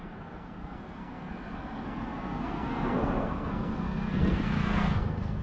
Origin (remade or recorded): remade